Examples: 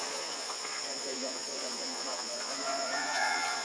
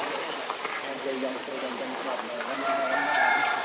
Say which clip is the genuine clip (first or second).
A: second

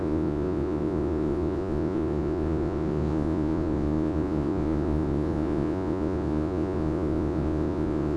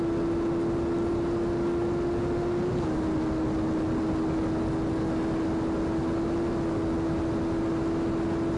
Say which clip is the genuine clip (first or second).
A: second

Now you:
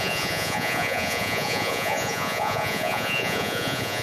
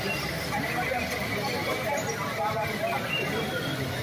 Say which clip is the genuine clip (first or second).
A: second